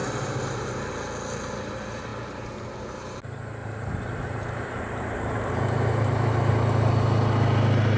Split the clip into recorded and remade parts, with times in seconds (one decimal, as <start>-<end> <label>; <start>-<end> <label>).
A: 0.0-0.9 remade; 0.9-3.6 recorded; 3.6-6.5 remade; 6.5-8.0 recorded